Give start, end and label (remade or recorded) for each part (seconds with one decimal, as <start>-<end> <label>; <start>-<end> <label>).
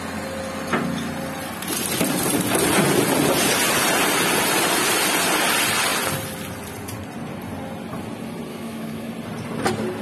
0.0-8.5 recorded; 8.5-9.1 remade; 9.1-10.0 recorded